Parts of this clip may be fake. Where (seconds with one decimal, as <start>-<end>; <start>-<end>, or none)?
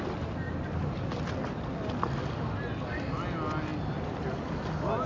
none